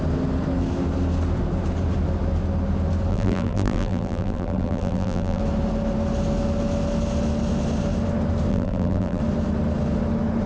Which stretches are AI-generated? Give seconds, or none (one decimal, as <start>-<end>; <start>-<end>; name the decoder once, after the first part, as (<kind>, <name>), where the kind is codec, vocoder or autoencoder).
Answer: 3.1-5.4 (vocoder, BigVGAN v2); 8.5-9.2